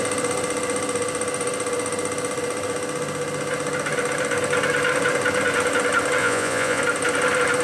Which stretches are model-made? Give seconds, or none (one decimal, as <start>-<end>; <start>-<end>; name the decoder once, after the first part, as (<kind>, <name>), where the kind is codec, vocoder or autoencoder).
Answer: 6.2-6.8 (vocoder, Vocos)